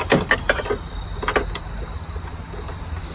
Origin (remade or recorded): recorded